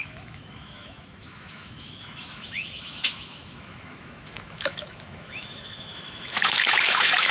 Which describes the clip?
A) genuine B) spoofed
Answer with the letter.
B